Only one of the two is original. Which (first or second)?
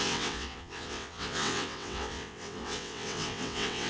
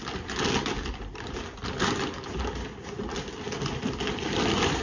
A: second